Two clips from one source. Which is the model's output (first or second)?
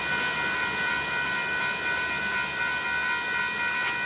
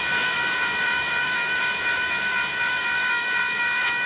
second